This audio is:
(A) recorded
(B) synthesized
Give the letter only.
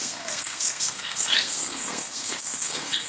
B